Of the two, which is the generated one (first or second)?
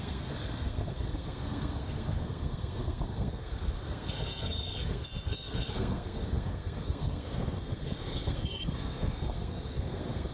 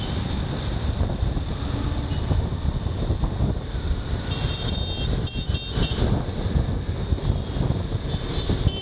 first